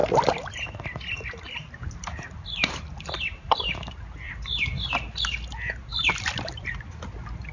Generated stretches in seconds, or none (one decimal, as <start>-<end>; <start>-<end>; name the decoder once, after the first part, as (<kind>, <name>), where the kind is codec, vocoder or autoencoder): 5.9-6.5 (vocoder, BigVGAN v2)